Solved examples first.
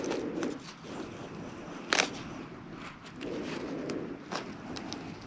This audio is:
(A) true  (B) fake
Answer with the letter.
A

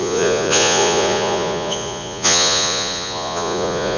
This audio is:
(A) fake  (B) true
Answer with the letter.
A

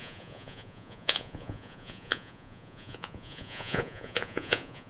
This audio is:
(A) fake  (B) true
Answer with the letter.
A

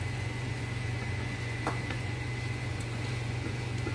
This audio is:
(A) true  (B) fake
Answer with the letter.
B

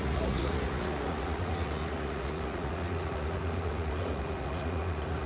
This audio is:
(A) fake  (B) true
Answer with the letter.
A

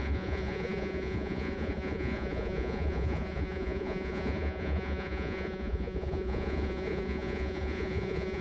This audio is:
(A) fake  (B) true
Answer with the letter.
A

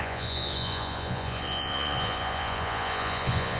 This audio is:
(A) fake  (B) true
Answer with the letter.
A